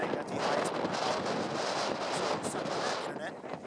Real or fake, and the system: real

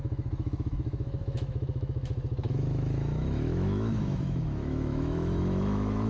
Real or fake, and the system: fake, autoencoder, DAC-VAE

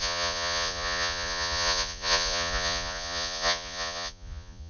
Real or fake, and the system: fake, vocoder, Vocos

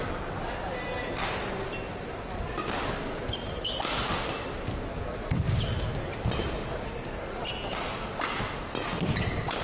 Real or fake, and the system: real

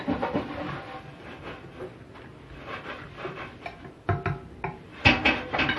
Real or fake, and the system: real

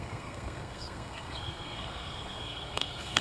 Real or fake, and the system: fake, codec, SNAC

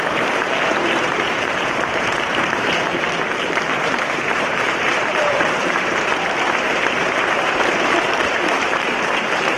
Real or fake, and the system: fake, vocoder, BigVGAN v2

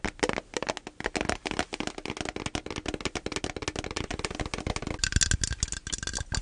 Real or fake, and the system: real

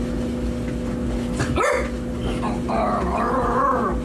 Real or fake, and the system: real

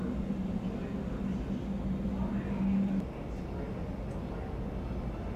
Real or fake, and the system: real